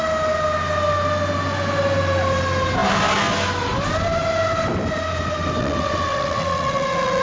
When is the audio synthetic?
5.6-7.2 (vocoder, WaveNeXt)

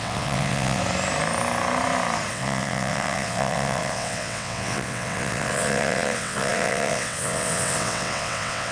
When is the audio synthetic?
0.0-0.8 (vocoder, WaveNeXt); 2.3-8.7

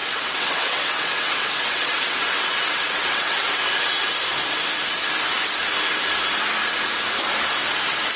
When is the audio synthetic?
0.0-3.6 (vocoder, WaveNeXt)

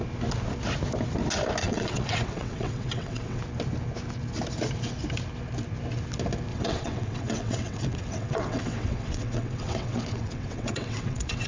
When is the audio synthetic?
1.6-3.4 (vocoder, WaveNeXt); 6.5-11.5

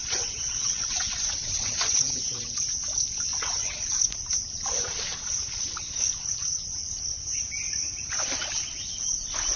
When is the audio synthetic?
0.0-2.5 (vocoder, WaveNeXt); 3.3-4.0

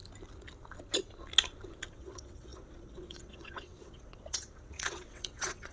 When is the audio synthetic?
1.9-5.7 (vocoder, WaveNeXt)

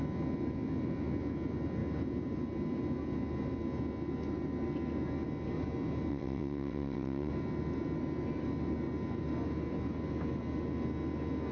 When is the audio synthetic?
6.1-7.3 (vocoder, WaveNeXt)

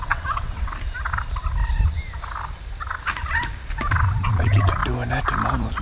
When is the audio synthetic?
0.0-0.7 (vocoder, WaveNeXt); 4.2-4.8